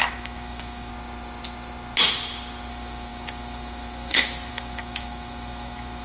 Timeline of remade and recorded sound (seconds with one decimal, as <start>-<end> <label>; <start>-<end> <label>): 0.0-0.9 remade; 0.9-2.7 recorded; 2.7-6.0 remade